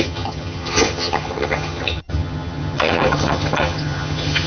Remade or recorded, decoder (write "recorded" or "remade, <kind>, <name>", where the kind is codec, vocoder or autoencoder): remade, vocoder, HiFi-GAN